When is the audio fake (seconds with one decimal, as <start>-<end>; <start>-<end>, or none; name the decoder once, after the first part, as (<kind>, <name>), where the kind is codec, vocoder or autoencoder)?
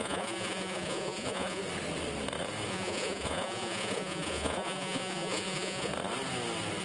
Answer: 0.0-1.6 (vocoder, Vocos); 2.7-5.9